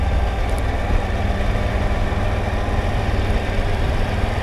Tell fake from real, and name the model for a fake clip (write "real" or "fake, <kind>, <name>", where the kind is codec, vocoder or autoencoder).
fake, vocoder, BigVGAN v2